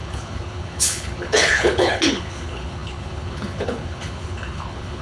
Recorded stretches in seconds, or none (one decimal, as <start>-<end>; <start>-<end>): none